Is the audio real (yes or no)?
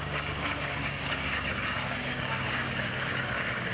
no